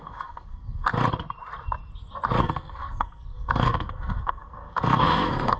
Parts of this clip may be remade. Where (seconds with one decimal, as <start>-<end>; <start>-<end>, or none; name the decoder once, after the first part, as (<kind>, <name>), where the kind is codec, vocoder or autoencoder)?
0.0-0.9 (codec, SNAC); 2.4-5.6